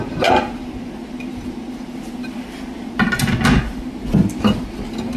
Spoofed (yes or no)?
no